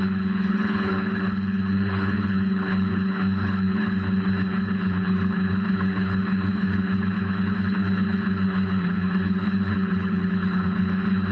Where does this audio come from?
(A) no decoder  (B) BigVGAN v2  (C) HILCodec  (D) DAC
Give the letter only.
C